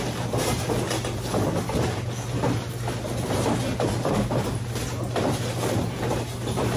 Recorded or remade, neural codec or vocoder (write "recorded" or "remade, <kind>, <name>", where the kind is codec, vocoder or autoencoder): recorded